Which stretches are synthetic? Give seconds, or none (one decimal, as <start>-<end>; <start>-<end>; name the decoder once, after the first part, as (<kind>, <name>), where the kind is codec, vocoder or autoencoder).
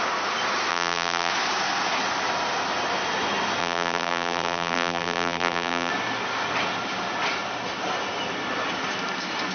0.7-1.3 (vocoder, BigVGAN v2); 3.6-5.9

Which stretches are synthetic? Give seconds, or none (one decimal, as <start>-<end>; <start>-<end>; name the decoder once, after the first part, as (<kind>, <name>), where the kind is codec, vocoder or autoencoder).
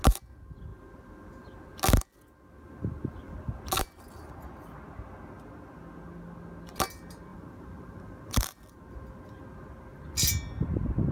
7.3-8.6 (vocoder, BigVGAN v2)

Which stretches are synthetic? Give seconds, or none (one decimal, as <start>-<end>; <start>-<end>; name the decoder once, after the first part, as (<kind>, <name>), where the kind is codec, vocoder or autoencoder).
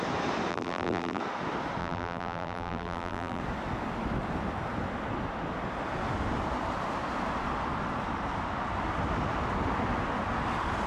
0.5-1.2 (vocoder, BigVGAN v2); 1.8-3.4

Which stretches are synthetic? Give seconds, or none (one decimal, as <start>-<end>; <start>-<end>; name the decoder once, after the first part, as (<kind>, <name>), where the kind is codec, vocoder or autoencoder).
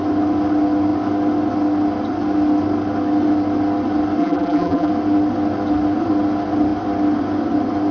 4.2-4.9 (vocoder, BigVGAN v2)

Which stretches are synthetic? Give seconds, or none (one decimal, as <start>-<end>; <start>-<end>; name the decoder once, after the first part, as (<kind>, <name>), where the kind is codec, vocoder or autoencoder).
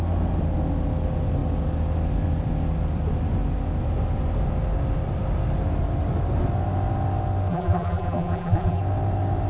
7.5-8.8 (vocoder, BigVGAN v2)